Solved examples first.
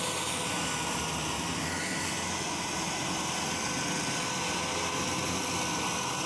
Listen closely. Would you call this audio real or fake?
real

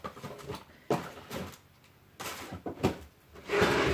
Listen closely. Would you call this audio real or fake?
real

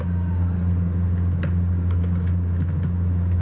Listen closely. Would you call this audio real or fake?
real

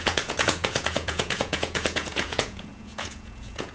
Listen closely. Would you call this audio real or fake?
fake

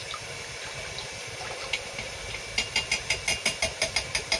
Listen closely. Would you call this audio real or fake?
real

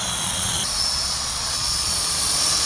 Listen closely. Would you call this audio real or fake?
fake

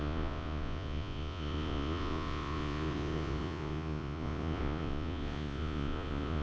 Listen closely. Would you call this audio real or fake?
fake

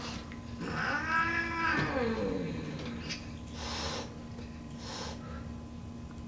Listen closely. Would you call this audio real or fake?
real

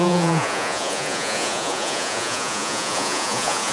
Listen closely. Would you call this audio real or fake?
fake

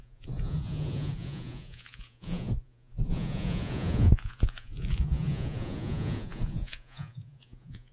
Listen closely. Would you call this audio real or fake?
fake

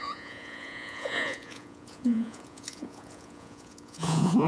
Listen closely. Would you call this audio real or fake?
fake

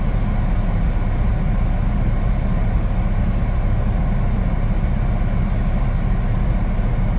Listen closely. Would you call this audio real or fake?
real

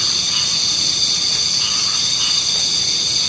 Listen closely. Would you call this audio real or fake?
real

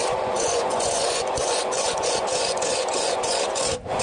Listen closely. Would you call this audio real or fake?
fake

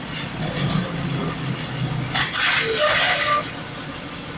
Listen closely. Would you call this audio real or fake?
real